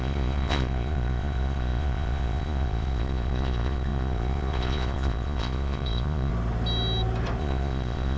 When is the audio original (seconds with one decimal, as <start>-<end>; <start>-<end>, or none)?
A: 6.3-7.4